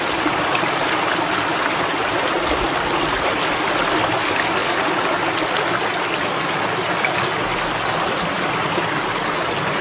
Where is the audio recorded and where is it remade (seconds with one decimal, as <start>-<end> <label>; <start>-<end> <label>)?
0.0-9.8 recorded